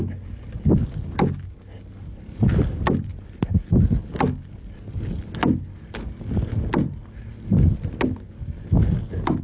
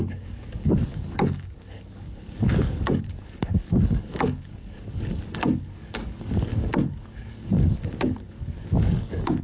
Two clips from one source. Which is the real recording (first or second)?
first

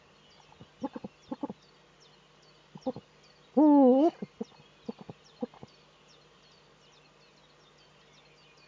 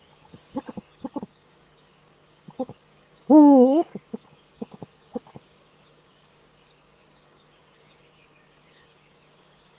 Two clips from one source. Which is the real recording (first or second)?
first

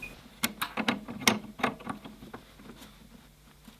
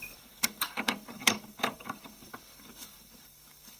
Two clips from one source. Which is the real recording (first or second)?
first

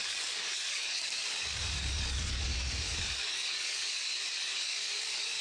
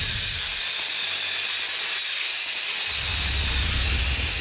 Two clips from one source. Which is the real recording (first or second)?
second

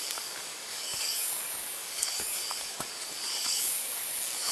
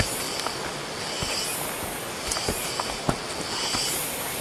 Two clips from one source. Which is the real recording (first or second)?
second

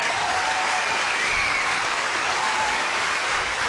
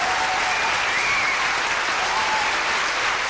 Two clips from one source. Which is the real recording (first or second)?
second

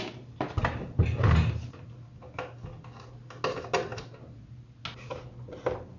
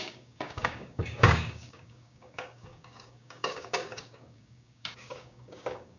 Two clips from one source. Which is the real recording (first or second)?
first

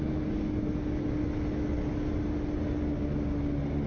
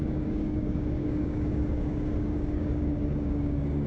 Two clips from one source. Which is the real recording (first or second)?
first